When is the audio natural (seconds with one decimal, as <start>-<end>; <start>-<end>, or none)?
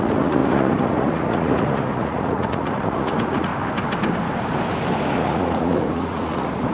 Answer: 3.5-5.1